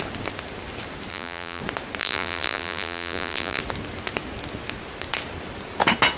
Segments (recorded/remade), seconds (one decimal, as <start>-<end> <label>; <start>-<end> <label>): 0.0-1.1 recorded; 1.1-1.6 remade; 1.6-2.0 recorded; 2.0-3.6 remade; 3.6-6.2 recorded